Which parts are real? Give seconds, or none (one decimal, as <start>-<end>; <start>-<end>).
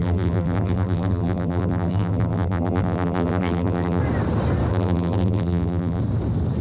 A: 4.0-4.7; 6.0-6.6